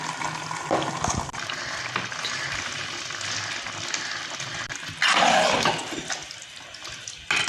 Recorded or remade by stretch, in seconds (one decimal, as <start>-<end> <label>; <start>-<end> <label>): 0.0-7.5 recorded